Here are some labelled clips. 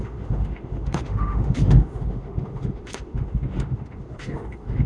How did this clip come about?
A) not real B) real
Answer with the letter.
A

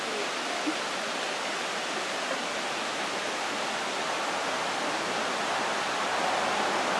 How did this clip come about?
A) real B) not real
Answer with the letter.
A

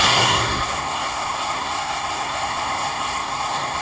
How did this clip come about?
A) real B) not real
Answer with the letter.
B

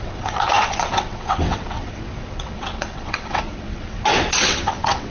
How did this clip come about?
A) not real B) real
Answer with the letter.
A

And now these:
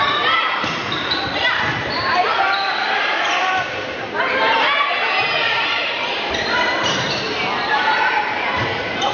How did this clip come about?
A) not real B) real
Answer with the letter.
A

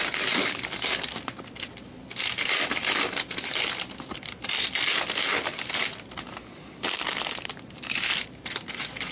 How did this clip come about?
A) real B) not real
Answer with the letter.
A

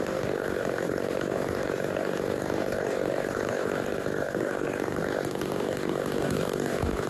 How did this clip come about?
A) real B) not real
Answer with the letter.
B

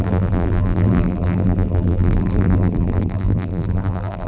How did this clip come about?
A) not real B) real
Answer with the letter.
A